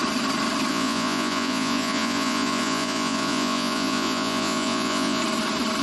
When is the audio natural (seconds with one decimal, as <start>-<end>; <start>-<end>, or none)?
0.0-0.7; 5.2-5.8